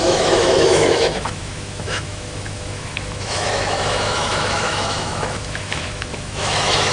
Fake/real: fake